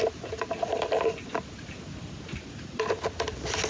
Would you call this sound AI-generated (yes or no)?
no